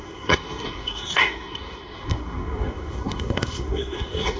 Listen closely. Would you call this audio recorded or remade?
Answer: remade